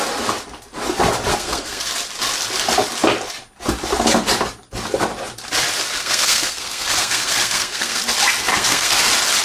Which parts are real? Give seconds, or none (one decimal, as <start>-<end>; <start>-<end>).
0.0-1.3; 1.9-6.0; 8.0-8.5; 9.0-9.4